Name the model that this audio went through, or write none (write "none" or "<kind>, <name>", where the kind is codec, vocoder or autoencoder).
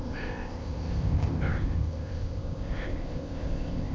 codec, ZipCodec